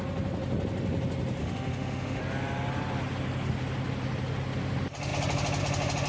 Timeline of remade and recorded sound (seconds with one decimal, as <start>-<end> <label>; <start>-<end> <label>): 0.0-1.4 recorded; 1.4-2.2 remade; 2.2-6.1 recorded